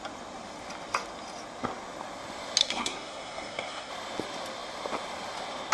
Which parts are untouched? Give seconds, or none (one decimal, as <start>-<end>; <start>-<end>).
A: 0.0-2.6; 3.9-5.7

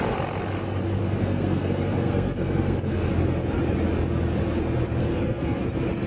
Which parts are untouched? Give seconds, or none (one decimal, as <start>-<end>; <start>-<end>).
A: 0.0-1.0; 3.1-5.0; 5.6-6.1